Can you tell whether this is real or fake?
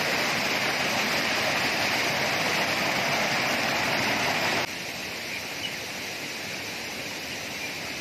real